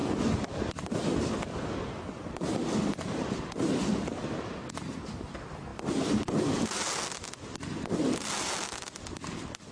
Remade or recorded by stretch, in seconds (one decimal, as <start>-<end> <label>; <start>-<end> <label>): 0.0-9.7 recorded

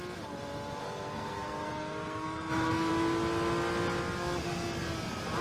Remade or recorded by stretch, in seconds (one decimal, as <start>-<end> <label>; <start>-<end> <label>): 0.0-0.8 recorded; 0.8-2.9 remade; 2.9-5.4 recorded

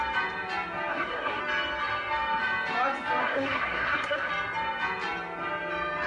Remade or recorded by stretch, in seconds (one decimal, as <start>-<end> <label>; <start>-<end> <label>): 0.0-0.9 recorded; 0.9-1.4 remade; 1.4-3.2 recorded; 3.2-4.3 remade; 4.3-6.1 recorded

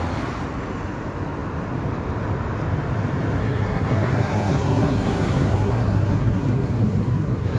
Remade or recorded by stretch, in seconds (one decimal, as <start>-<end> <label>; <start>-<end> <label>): 0.0-3.4 recorded; 3.4-7.6 remade

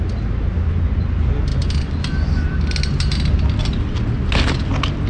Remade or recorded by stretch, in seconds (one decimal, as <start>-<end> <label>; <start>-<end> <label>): 0.0-5.1 recorded

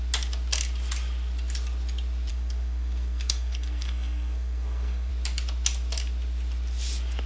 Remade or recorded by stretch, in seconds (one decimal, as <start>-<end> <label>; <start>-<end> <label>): 0.0-2.3 recorded; 2.3-5.1 remade; 5.1-7.3 recorded